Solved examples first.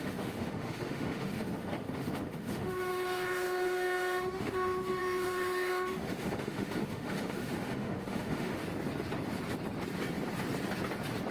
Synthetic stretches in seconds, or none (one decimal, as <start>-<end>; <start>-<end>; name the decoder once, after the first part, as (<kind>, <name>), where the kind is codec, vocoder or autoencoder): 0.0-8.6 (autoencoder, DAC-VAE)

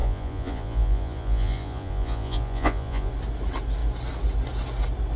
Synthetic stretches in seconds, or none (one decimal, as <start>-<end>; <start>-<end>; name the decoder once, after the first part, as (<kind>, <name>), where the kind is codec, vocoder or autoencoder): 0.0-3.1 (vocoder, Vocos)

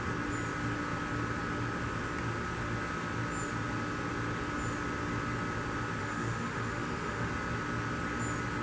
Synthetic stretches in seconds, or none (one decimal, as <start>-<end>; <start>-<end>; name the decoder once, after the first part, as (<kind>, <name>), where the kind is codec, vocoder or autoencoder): 6.0-7.3 (autoencoder, DAC-VAE)

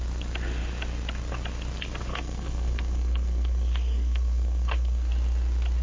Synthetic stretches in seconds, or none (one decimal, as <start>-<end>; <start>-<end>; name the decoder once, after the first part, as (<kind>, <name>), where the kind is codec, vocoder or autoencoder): 2.1-5.1 (codec, SNAC)

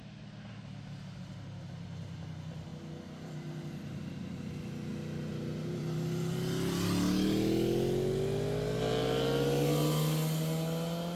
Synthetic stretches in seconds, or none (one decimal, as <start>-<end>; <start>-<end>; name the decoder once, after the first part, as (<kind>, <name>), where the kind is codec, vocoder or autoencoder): none